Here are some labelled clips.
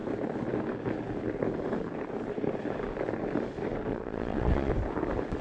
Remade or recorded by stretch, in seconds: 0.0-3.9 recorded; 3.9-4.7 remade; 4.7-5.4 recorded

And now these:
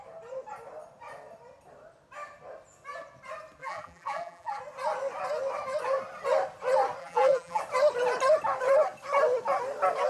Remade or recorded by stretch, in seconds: 0.0-3.6 recorded; 3.6-4.6 remade; 4.6-7.0 recorded; 7.0-7.6 remade; 7.6-10.1 recorded

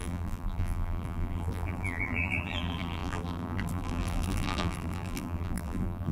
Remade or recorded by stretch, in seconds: 0.0-6.1 remade

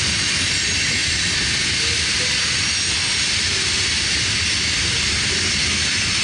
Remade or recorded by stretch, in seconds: 0.0-6.2 recorded